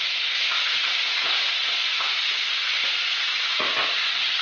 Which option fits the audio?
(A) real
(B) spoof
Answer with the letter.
B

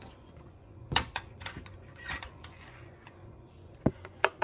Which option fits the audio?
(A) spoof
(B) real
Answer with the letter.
A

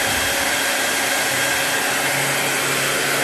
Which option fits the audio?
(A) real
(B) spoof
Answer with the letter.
A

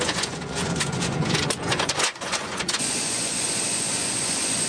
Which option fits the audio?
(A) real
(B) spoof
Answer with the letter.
B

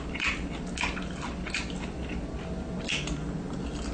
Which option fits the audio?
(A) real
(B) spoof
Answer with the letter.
A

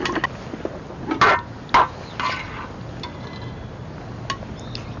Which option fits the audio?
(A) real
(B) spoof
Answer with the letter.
A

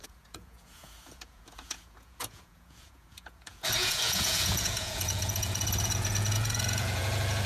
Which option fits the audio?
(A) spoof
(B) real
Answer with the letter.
A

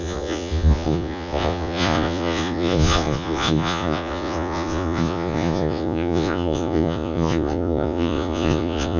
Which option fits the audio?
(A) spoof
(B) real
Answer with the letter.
A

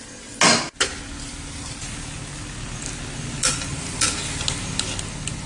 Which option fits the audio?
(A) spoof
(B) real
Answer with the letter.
B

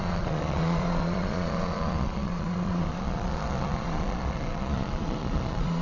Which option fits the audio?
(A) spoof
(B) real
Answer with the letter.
A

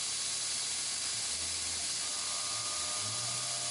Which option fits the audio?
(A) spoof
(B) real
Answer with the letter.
B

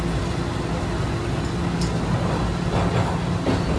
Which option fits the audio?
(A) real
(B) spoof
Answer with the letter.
A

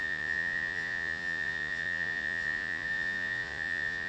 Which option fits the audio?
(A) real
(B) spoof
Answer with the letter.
B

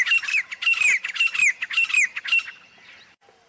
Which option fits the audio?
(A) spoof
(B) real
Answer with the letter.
B